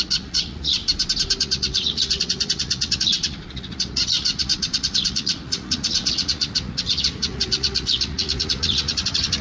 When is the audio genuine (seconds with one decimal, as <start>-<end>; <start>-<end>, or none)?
0.8-1.4